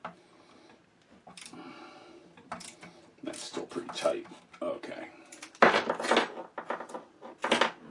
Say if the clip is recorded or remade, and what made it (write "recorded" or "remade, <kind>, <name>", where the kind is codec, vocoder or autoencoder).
recorded